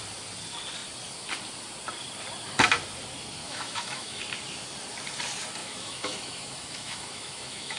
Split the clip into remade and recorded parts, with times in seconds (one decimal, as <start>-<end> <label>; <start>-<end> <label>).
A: 0.0-3.4 recorded; 3.4-4.2 remade; 4.2-5.6 recorded; 5.6-7.8 remade